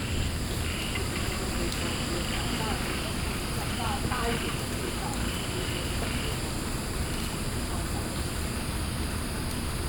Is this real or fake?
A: real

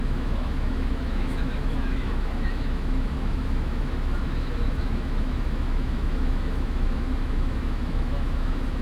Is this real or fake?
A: fake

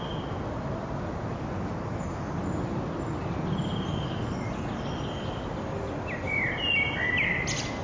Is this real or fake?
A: real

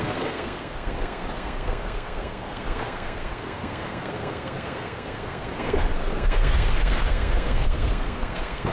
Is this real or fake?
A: fake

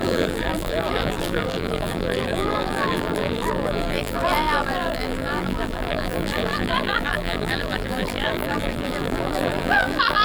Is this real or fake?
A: fake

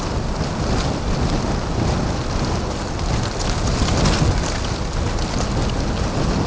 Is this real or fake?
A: real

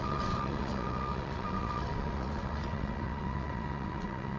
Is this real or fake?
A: fake